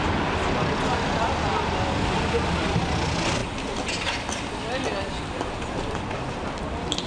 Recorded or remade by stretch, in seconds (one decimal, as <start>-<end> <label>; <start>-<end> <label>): 0.0-7.1 recorded